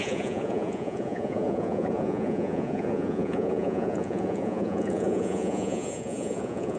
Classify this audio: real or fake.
fake